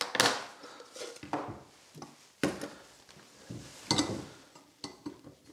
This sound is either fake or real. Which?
real